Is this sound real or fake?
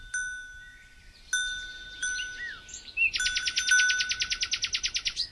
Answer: real